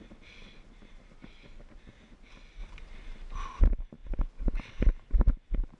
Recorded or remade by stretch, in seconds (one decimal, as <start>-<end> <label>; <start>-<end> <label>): 0.0-5.8 recorded